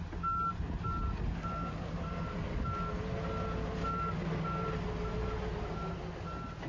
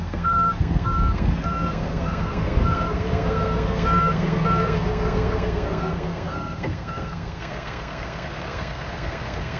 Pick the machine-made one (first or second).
second